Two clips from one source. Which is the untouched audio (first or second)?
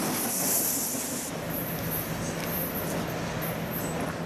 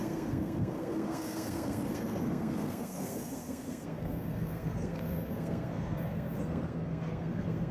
first